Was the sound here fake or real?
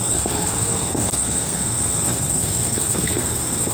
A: fake